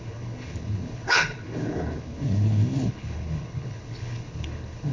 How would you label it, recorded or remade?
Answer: remade